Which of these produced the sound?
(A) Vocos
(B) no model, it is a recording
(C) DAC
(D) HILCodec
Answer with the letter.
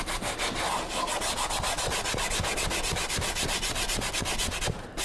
B